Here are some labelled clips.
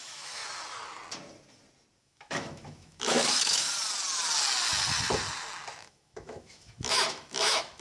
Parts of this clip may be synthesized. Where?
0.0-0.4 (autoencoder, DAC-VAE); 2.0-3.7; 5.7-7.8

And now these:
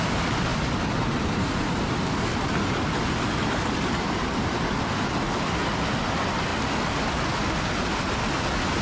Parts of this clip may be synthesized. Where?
none